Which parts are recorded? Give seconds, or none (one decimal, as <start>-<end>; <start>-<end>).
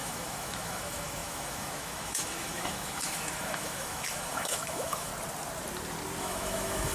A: 5.1-6.2